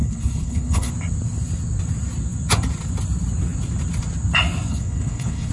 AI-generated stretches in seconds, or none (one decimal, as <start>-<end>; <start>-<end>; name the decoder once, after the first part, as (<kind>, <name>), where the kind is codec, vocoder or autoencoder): 0.0-0.9 (codec, HILCodec); 4.7-5.5